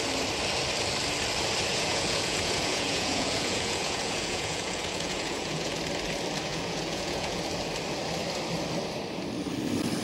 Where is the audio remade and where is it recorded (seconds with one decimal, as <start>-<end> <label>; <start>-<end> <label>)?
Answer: 0.0-1.7 recorded; 1.7-5.8 remade; 5.8-6.5 recorded; 6.5-7.4 remade; 7.4-10.0 recorded